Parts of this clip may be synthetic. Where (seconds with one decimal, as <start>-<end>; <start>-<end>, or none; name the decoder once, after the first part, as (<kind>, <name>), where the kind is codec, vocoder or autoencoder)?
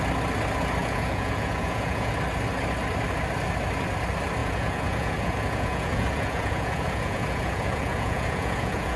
0.8-2.1 (vocoder, Vocos); 4.4-9.0